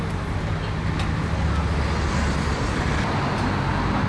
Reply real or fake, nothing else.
real